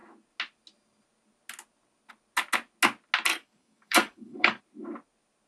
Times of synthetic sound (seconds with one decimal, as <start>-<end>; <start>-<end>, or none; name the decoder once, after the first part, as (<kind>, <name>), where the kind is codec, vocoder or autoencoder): 3.3-4.6 (codec, DAC)